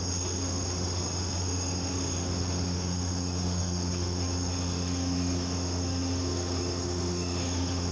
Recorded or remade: remade